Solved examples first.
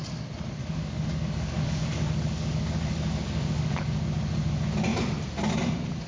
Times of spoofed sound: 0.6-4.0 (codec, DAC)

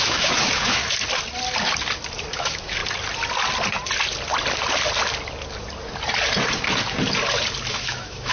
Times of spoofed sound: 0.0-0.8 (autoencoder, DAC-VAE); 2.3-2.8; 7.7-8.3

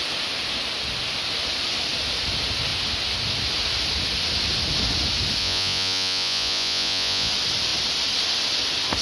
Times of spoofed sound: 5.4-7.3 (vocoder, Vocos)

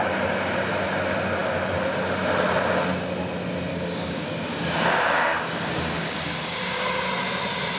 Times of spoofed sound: 3.7-7.2 (codec, DAC)

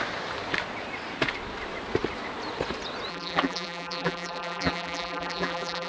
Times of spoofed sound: 3.1-5.9 (vocoder, BigVGAN v2)